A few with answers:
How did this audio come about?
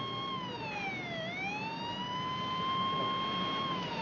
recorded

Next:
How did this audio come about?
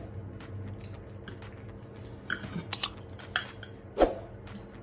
recorded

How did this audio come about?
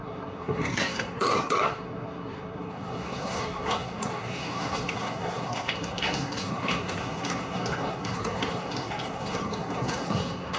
remade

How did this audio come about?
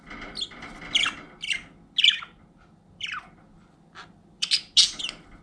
recorded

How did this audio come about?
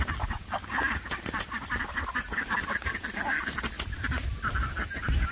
recorded